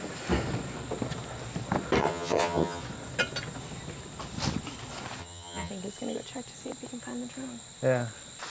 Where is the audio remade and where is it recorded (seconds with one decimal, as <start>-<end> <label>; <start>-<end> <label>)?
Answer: 0.0-2.0 recorded; 2.0-2.8 remade; 2.8-5.2 recorded; 5.2-5.7 remade; 5.7-8.5 recorded

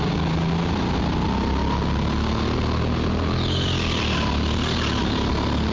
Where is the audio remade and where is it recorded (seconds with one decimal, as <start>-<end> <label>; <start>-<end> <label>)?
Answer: 0.0-5.7 recorded

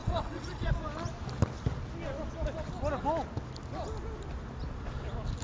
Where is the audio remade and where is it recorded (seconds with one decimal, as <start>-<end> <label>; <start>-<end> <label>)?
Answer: 0.0-0.7 remade; 0.7-5.4 recorded

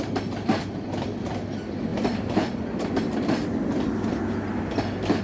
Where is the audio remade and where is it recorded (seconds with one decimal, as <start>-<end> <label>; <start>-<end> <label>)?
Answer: 0.0-5.2 recorded

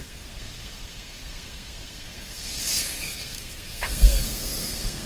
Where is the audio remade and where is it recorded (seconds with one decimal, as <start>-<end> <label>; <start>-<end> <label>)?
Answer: 0.0-5.1 remade

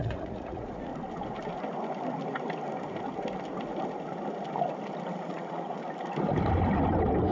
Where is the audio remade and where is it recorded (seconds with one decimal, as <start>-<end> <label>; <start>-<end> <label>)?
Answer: 0.0-0.9 remade; 0.9-5.3 recorded; 5.3-5.8 remade; 5.8-7.3 recorded

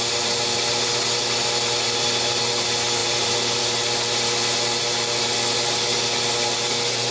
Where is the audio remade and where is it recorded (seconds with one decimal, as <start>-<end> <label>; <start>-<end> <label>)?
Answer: 0.0-7.1 recorded